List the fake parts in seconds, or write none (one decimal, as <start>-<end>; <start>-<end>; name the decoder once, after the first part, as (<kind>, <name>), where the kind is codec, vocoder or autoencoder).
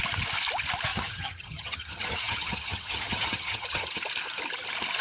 0.9-3.9 (vocoder, HiFi-GAN)